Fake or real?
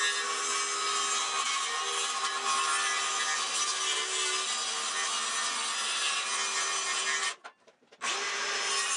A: real